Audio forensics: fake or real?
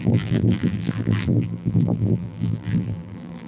fake